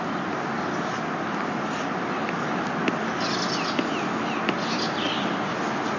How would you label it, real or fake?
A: real